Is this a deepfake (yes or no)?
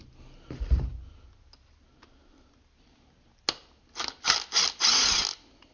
no